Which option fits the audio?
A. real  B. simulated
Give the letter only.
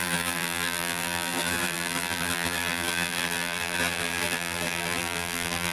B